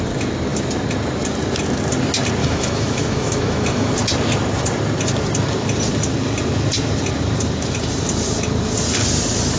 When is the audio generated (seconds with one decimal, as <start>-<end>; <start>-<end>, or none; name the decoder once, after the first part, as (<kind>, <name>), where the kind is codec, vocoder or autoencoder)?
2.4-3.9 (autoencoder, DAC-VAE)